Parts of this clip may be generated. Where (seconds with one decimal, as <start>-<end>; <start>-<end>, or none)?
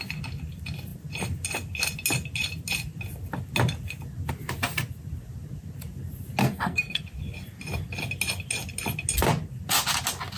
6.4-7.0